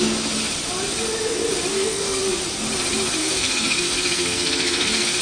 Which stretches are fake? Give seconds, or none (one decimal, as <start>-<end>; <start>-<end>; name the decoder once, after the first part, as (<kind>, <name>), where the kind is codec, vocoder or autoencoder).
1.7-2.2 (codec, SNAC); 3.2-5.2